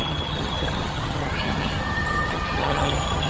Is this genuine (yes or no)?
no